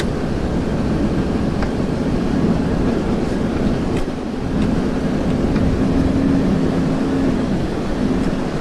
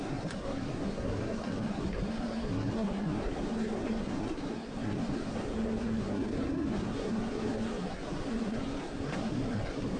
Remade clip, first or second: second